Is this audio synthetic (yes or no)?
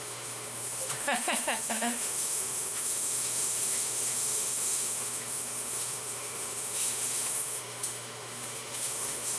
yes